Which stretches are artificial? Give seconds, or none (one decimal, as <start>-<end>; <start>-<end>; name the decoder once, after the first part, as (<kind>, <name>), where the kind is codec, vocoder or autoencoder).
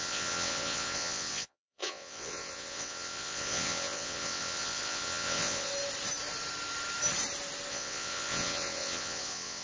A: 0.0-5.7 (vocoder, WaveNeXt); 7.7-9.6